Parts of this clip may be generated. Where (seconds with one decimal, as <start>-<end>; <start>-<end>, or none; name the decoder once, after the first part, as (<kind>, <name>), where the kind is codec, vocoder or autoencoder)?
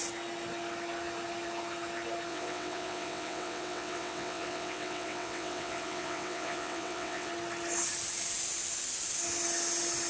2.3-7.3 (vocoder, WaveNeXt)